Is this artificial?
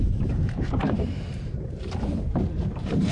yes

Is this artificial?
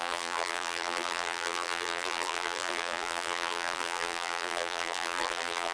yes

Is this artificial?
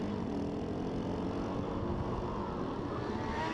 no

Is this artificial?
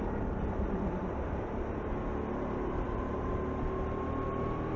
no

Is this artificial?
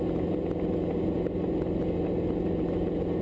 no